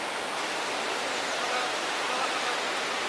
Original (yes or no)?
yes